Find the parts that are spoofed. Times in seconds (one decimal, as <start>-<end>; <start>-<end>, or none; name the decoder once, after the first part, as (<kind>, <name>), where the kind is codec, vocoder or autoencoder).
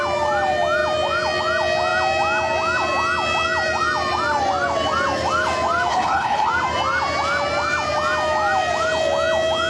5.9-6.5 (codec, HILCodec)